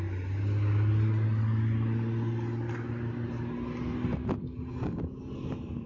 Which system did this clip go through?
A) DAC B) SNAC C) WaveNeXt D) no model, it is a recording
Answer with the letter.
D